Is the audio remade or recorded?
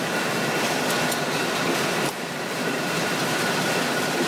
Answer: recorded